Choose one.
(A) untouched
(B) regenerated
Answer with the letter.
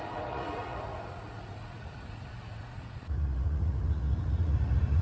B